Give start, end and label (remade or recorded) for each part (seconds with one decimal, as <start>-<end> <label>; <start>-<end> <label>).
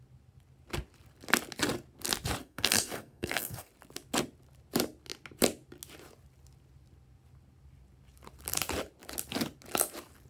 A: 0.0-2.4 recorded; 2.4-3.7 remade; 3.7-10.3 recorded